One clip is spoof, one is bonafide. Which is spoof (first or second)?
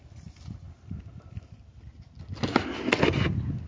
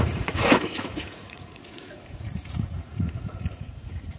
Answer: second